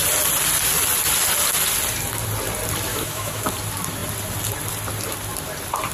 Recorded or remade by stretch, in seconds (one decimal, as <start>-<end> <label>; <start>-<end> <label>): 0.0-2.9 recorded; 2.9-3.5 remade; 3.5-5.9 recorded